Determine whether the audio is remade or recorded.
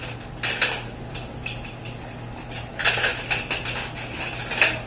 recorded